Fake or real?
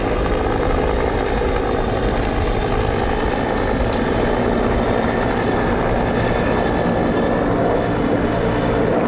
real